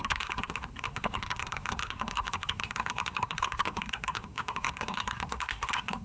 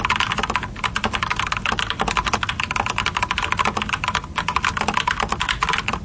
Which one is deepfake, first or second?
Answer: first